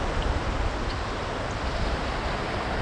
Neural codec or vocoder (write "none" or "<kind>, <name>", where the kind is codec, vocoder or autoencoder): none